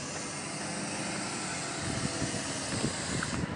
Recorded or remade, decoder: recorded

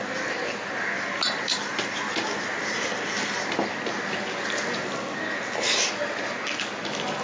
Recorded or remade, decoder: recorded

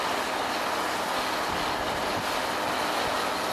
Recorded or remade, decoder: recorded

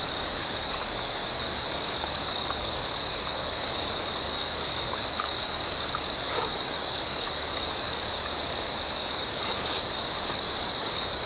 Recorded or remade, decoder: remade, codec, DAC